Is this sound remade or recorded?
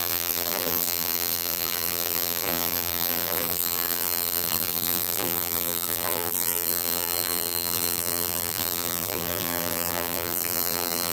remade